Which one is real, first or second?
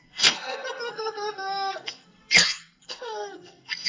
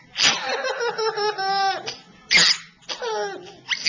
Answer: second